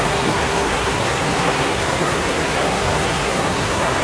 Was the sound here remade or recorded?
remade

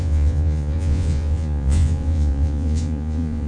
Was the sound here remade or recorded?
remade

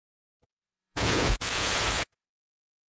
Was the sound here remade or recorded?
remade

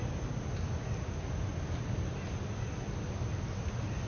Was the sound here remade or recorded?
recorded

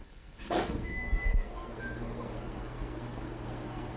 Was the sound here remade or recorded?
remade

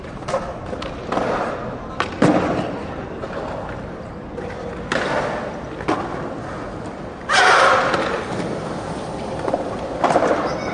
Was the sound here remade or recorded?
recorded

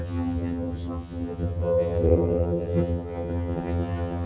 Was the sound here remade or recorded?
remade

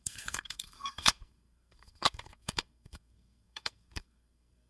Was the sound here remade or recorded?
remade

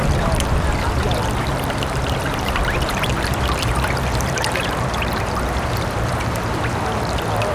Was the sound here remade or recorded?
remade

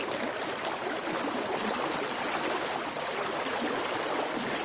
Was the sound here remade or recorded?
recorded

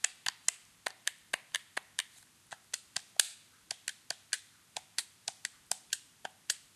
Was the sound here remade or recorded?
recorded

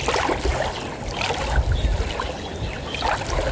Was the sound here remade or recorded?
recorded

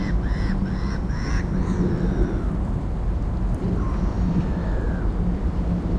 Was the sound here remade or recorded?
remade